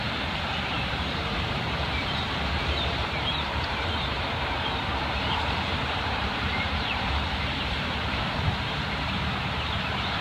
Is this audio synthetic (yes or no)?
yes